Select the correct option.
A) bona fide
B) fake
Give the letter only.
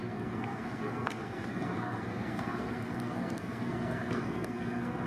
B